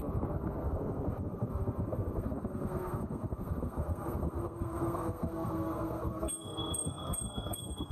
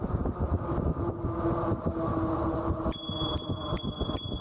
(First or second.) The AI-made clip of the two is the first